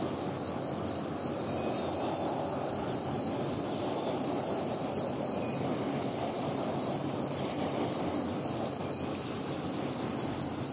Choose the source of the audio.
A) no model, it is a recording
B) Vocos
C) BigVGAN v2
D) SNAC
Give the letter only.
A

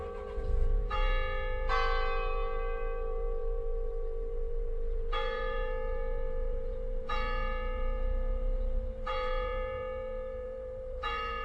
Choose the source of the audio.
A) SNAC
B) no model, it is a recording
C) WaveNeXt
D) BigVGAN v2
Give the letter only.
D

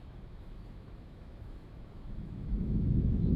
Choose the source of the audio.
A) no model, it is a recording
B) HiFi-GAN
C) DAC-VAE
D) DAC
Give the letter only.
C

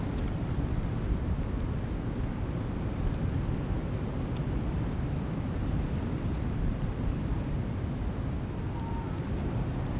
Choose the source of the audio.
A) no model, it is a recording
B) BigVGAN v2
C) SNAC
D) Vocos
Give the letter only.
A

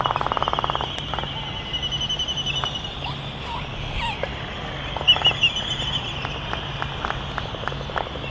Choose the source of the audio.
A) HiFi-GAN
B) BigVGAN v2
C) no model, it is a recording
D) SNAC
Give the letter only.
C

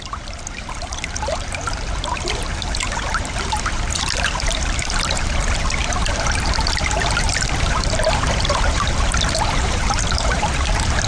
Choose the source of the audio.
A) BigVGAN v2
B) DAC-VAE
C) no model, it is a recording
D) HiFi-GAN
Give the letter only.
A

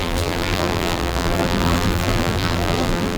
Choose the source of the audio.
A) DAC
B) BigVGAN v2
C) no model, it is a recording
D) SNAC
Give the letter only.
B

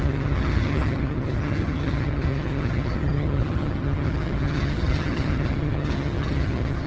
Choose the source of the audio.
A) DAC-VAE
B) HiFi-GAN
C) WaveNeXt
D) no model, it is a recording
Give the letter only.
B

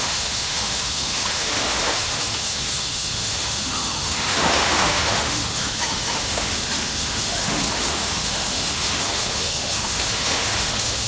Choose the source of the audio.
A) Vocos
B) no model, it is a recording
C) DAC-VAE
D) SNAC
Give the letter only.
C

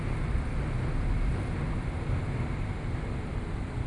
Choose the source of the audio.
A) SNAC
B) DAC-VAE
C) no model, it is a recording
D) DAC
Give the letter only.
C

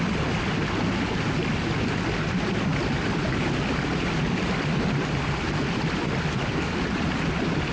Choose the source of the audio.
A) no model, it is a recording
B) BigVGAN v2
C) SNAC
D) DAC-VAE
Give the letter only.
A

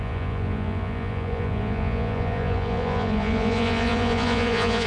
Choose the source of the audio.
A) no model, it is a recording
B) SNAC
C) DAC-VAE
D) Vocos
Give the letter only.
D